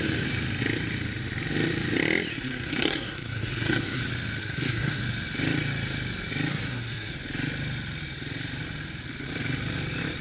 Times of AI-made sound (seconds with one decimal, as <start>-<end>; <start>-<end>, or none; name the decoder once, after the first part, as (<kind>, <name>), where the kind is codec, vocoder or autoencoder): 2.3-4.0 (codec, SNAC); 4.4-5.0; 6.5-7.1